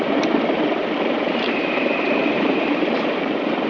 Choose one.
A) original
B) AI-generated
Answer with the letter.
B